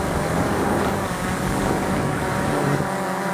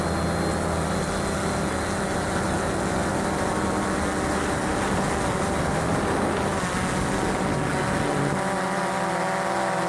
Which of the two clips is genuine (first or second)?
second